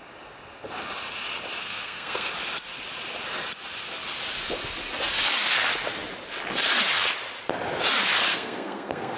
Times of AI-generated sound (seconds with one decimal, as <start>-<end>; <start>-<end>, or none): 1.6-2.3; 8.3-9.2